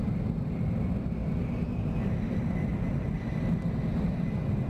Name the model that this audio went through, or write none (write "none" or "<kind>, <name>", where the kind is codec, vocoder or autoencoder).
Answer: none